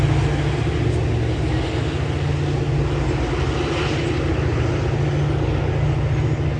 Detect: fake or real real